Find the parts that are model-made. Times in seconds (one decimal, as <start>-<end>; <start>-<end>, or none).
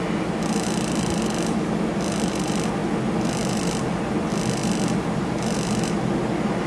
none